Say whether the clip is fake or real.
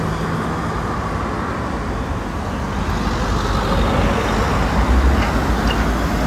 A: real